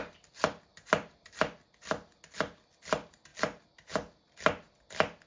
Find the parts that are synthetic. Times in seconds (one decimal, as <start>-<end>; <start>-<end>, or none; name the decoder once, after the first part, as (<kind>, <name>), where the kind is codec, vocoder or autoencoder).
none